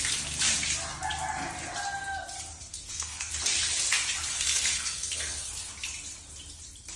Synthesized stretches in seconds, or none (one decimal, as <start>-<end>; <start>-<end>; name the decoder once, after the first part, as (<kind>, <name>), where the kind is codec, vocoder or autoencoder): 2.6-3.3 (codec, SNAC); 4.3-5.7